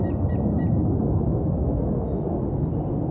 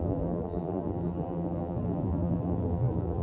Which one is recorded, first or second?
first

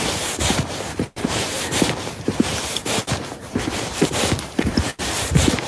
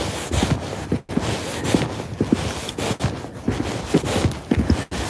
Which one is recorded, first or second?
second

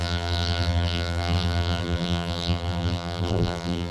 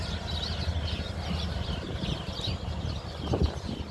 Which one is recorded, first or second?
second